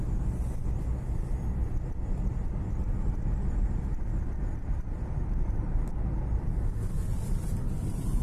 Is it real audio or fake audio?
real